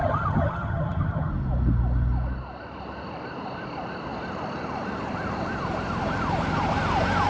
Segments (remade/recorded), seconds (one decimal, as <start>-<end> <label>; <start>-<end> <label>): 0.0-1.3 remade; 1.3-7.3 recorded